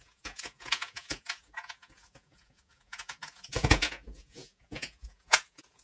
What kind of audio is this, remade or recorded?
remade